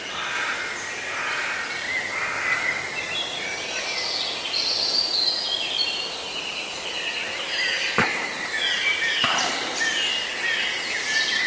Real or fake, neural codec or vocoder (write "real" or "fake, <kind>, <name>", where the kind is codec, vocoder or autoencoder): real